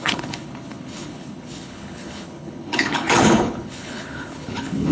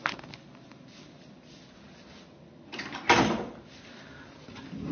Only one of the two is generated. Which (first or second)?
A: first